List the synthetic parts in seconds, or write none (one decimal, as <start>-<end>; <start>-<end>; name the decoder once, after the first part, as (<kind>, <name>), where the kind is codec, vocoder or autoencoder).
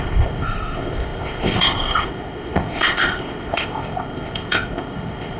0.0-5.4 (codec, ZipCodec)